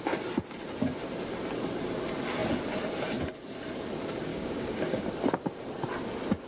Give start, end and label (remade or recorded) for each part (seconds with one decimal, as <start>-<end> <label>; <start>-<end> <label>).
0.0-4.3 recorded; 4.3-5.1 remade; 5.1-6.5 recorded